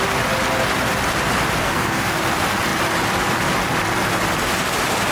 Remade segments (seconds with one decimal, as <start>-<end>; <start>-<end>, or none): 1.6-2.2